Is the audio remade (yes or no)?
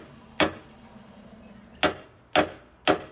no